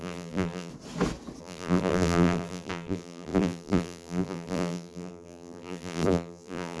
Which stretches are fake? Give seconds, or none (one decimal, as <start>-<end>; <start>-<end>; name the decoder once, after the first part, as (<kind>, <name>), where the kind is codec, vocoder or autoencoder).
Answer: 0.0-0.7 (vocoder, BigVGAN v2); 1.4-6.8